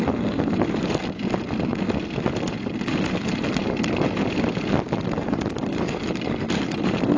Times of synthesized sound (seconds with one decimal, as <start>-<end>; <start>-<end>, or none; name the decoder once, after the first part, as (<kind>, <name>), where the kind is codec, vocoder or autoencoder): none